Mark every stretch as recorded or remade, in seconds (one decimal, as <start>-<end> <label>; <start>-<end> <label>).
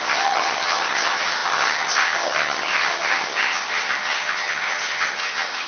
0.0-5.7 remade